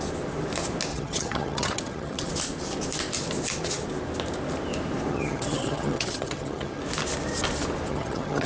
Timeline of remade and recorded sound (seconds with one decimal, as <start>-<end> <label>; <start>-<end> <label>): 0.0-0.9 recorded; 0.9-2.3 remade; 2.3-5.1 recorded; 5.1-6.8 remade; 6.8-7.9 recorded; 7.9-8.5 remade